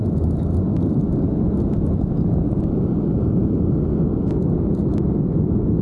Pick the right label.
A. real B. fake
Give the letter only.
A